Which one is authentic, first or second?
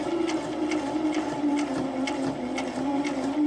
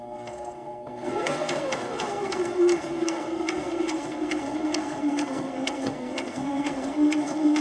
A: first